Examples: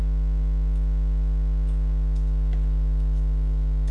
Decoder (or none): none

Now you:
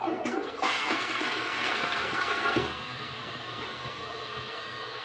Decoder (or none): codec, SNAC